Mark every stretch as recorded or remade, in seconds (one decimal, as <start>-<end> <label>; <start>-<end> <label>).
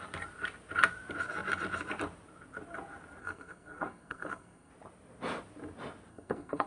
0.0-3.2 recorded; 3.2-4.7 remade; 4.7-6.1 recorded; 6.1-6.7 remade